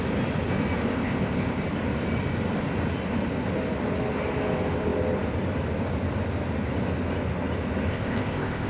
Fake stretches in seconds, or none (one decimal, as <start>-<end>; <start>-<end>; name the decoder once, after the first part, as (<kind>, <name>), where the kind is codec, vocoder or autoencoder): 0.9-1.6 (codec, ZipCodec); 7.9-8.7